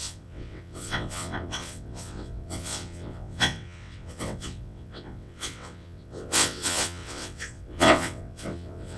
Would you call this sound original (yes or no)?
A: no